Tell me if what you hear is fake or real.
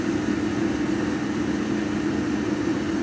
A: real